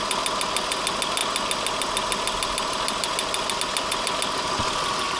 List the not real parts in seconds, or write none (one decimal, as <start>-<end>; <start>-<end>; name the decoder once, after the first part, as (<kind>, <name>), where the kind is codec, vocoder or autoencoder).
none

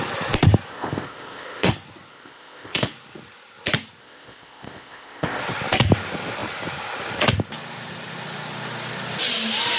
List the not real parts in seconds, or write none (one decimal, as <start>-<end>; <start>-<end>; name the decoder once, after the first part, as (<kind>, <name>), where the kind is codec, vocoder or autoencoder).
0.7-1.7 (codec, ZipCodec); 2.1-2.9; 4.0-5.4

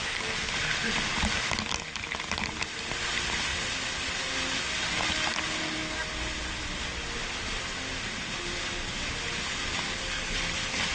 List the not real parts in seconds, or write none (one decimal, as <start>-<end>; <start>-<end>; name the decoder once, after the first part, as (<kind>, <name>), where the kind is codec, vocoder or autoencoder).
none

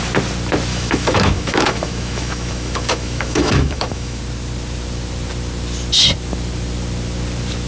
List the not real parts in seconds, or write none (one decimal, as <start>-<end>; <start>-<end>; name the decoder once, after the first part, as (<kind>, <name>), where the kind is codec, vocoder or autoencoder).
0.7-4.2 (autoencoder, DAC-VAE)

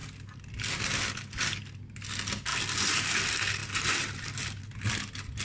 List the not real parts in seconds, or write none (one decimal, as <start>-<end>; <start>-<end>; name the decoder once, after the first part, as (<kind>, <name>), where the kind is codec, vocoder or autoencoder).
3.6-4.6 (vocoder, BigVGAN v2)